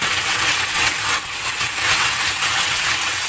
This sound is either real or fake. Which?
fake